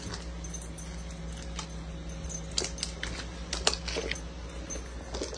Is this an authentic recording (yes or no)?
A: yes